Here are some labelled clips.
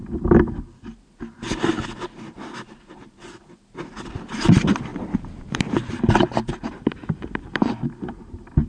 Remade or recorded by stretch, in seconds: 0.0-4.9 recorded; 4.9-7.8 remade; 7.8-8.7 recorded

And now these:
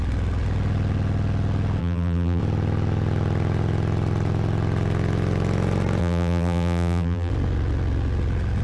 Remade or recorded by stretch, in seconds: 0.0-1.8 recorded; 1.8-2.4 remade; 2.4-6.0 recorded; 6.0-7.3 remade; 7.3-8.6 recorded

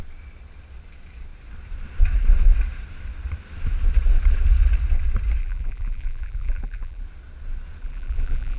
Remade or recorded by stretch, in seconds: 0.0-5.4 recorded; 5.4-7.0 remade; 7.0-7.8 recorded; 7.8-8.6 remade

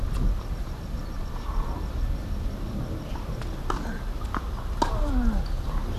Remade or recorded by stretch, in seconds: 0.0-0.6 recorded; 0.6-1.3 remade; 1.3-6.0 recorded